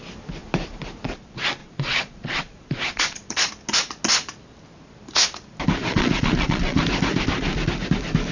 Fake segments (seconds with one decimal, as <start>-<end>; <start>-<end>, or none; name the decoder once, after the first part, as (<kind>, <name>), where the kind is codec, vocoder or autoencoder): 1.6-3.5 (vocoder, Vocos); 5.9-6.8